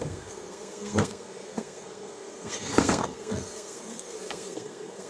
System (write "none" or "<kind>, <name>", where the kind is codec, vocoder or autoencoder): codec, SNAC